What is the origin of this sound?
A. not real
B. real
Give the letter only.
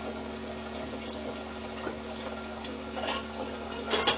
B